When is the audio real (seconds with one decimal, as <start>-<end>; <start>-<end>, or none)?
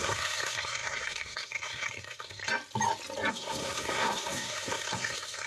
2.4-3.3